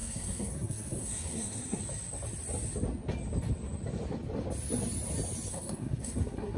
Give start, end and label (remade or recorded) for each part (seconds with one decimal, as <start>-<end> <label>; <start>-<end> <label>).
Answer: 0.0-1.8 remade; 1.8-5.5 recorded; 5.5-6.6 remade